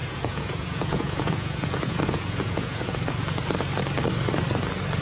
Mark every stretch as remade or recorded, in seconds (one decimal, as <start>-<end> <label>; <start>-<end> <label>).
0.0-3.0 remade; 3.0-5.0 recorded